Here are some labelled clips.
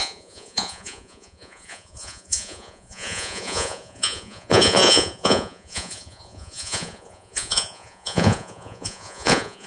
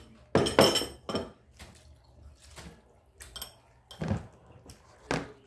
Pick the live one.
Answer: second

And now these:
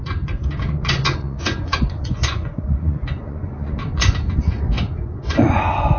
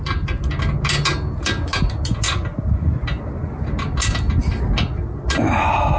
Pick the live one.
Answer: second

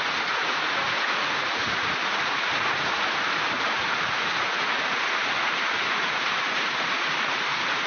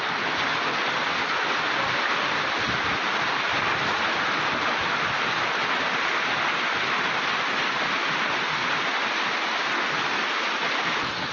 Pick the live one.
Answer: second